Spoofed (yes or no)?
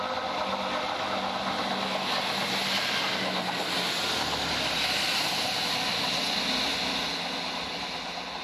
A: no